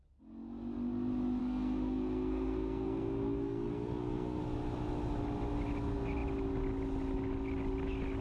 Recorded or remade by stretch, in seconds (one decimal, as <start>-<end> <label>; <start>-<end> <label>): 0.0-1.4 recorded; 1.4-4.4 remade; 4.4-8.2 recorded